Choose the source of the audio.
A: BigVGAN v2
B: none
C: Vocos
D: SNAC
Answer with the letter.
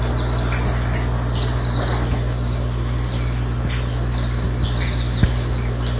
B